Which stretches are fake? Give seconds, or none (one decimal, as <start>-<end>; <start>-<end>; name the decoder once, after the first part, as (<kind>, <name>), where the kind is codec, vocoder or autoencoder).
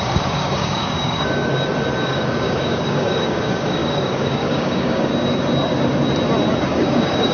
0.0-1.5 (codec, DAC); 2.0-5.1; 6.6-7.3